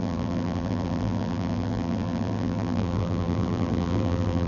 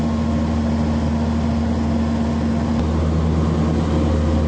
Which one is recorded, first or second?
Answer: second